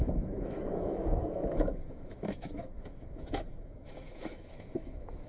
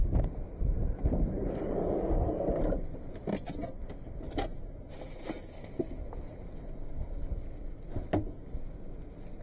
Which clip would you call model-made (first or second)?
first